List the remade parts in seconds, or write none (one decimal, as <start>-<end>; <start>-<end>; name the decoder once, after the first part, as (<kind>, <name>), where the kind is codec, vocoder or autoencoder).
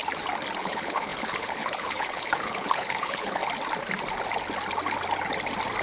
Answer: 0.6-3.4 (codec, HILCodec)